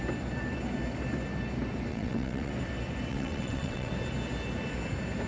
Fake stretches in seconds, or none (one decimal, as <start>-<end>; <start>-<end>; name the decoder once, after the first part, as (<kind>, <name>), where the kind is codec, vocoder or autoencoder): 1.9-2.5 (vocoder, WaveNeXt); 3.1-3.9